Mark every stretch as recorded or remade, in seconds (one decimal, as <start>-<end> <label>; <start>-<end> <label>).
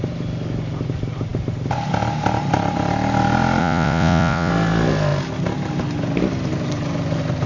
0.0-3.6 recorded; 3.6-4.5 remade; 4.5-7.5 recorded